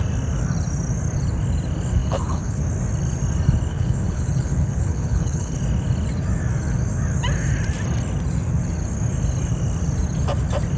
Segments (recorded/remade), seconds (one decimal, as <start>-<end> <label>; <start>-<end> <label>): 0.0-2.0 recorded; 2.0-2.6 remade; 2.6-3.7 recorded; 3.7-5.6 remade; 5.6-10.8 recorded